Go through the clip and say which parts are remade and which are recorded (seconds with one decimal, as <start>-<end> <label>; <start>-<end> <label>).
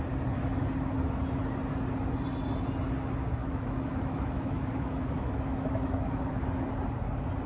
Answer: 0.0-3.4 recorded; 3.4-6.5 remade; 6.5-7.5 recorded